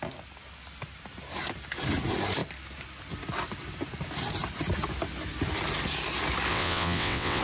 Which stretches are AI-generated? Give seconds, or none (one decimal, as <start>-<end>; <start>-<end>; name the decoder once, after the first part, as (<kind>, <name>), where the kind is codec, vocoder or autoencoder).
6.5-7.4 (vocoder, WaveNeXt)